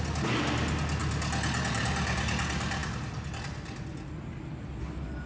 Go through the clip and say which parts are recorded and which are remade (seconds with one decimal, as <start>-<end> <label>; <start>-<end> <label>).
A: 0.0-2.8 recorded; 2.8-3.3 remade; 3.3-5.3 recorded